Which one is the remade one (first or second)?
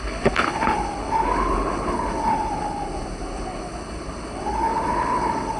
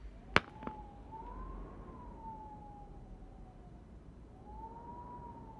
first